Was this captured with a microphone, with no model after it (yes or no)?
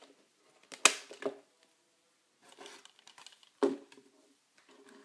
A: yes